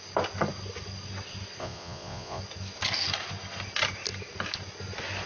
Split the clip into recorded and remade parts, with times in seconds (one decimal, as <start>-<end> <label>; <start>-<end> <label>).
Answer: 0.0-1.6 recorded; 1.6-2.4 remade; 2.4-5.3 recorded